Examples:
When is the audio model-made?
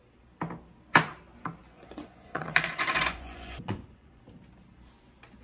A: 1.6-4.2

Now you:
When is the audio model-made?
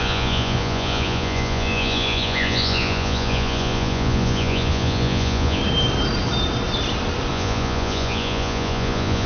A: 0.0-5.6; 7.3-9.3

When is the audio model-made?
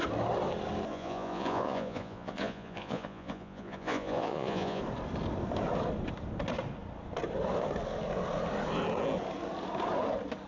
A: 0.9-4.8